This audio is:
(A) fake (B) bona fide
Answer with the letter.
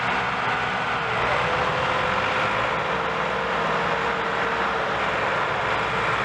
B